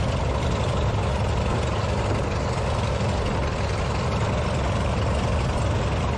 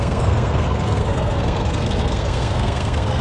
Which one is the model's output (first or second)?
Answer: second